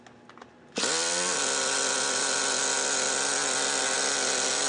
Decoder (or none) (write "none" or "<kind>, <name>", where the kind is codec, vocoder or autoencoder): none